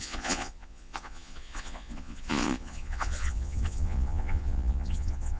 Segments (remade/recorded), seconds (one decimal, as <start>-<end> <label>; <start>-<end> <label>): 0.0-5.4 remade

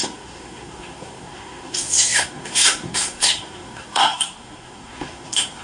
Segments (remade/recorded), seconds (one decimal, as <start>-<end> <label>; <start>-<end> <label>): 0.0-5.6 remade

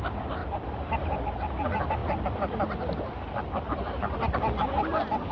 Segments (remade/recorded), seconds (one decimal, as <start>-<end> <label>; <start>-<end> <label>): 0.0-5.3 recorded